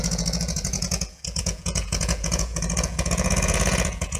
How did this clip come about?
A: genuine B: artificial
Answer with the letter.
B